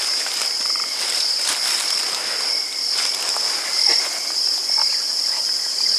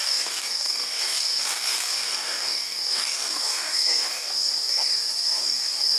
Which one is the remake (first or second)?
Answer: second